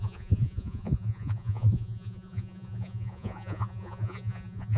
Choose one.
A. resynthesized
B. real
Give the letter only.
A